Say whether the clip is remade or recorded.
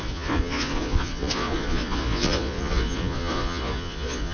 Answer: remade